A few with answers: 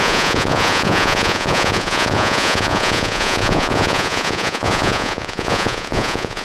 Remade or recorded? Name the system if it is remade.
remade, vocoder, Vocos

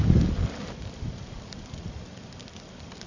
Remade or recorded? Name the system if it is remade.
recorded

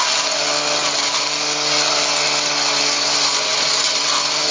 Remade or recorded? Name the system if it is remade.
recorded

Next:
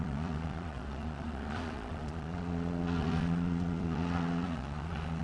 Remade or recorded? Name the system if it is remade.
remade, vocoder, Vocos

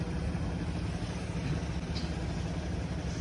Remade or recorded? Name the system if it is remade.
recorded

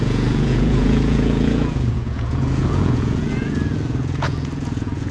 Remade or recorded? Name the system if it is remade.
remade, vocoder, Vocos